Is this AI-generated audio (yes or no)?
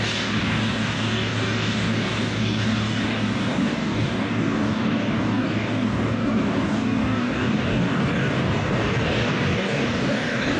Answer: yes